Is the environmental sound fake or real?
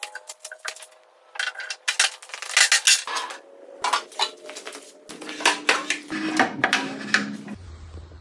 real